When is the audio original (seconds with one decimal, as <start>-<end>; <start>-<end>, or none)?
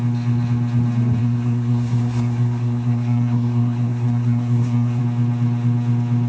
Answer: 0.0-1.2; 5.0-6.3